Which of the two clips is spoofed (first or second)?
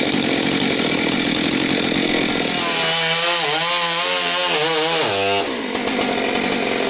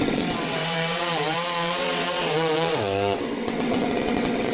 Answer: second